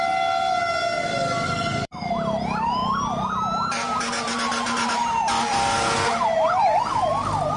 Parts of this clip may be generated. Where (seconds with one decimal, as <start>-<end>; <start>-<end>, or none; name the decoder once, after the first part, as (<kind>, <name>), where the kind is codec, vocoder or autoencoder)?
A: 1.1-2.1 (codec, DAC)